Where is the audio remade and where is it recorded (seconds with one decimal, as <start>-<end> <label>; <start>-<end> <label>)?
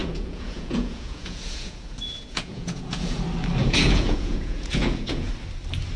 0.0-3.2 remade; 3.2-3.6 recorded; 3.6-5.3 remade; 5.3-6.0 recorded